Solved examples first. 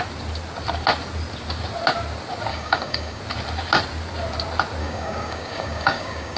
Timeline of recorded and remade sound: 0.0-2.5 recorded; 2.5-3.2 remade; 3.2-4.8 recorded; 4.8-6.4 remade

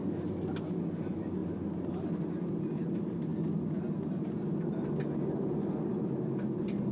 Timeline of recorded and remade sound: 0.0-6.9 recorded

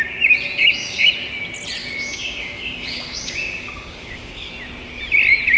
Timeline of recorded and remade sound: 0.0-0.6 recorded; 0.6-1.1 remade; 1.1-1.8 recorded; 1.8-4.5 remade; 4.5-5.6 recorded

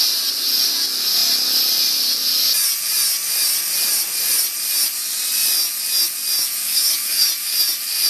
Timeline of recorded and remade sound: 0.0-6.6 recorded; 6.6-7.3 remade; 7.3-8.1 recorded

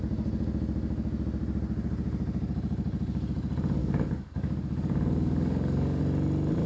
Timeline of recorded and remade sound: 0.0-3.8 recorded; 3.8-6.0 remade; 6.0-6.7 recorded